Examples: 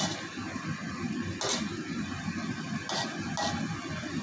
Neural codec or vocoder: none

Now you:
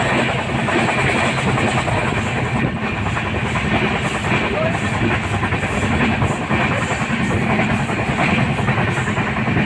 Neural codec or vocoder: none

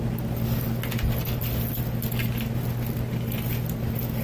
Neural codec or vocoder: none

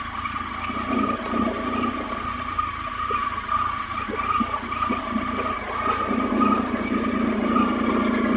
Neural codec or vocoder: none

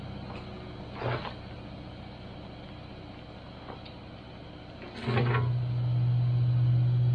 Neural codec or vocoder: none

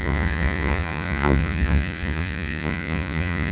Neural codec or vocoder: vocoder, Vocos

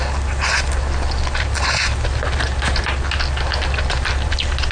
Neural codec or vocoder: none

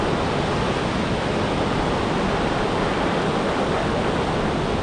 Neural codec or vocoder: none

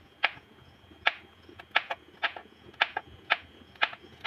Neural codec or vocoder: vocoder, Vocos